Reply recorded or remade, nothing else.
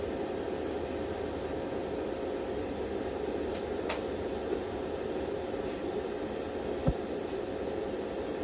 recorded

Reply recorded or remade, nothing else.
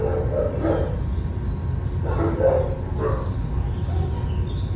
recorded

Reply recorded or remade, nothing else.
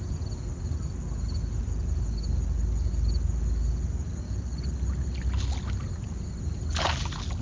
recorded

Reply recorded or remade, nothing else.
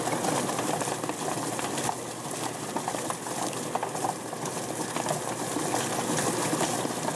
recorded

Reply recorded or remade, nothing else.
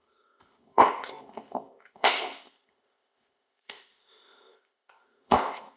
remade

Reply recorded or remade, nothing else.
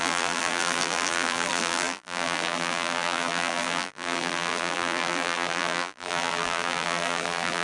remade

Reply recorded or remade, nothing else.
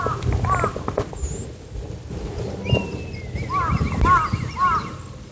recorded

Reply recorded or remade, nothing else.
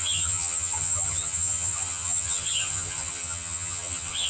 remade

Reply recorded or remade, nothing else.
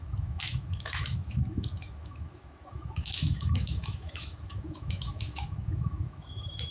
remade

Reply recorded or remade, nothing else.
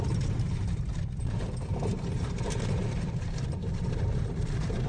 remade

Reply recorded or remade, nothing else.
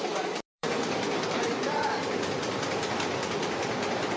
remade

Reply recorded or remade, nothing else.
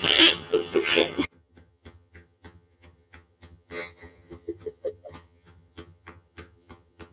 remade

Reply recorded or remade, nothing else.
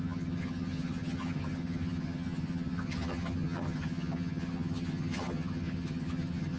remade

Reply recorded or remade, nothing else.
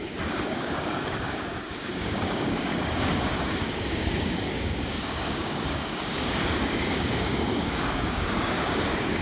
remade